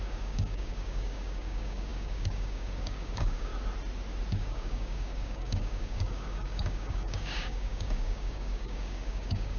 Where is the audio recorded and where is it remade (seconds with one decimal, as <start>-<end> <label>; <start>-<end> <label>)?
0.0-3.5 remade; 3.5-4.3 recorded; 4.3-9.6 remade